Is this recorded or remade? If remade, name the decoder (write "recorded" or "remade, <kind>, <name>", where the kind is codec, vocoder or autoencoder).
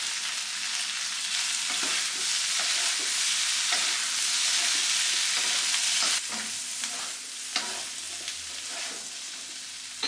recorded